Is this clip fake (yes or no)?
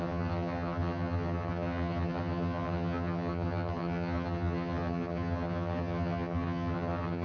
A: yes